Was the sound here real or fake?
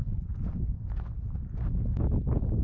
real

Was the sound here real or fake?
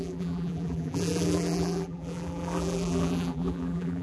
fake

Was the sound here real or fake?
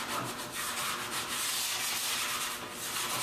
real